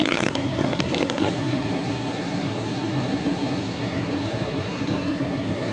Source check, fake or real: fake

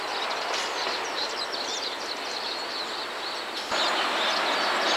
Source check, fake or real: real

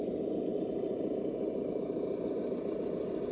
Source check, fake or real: real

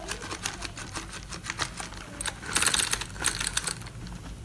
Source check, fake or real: real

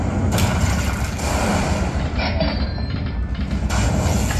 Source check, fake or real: real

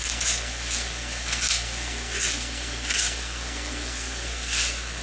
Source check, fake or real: fake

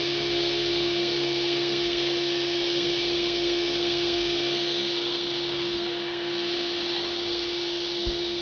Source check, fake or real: fake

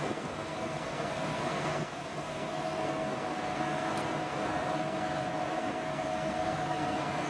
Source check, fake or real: fake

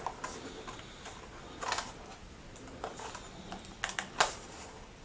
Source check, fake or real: real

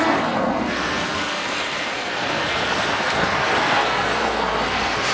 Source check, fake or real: fake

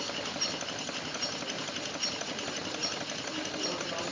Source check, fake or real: real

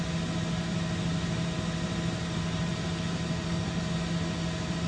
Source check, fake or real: real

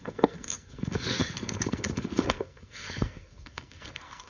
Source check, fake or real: fake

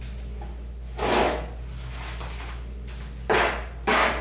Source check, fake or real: real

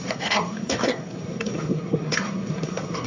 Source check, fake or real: fake